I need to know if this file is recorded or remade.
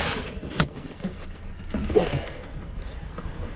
remade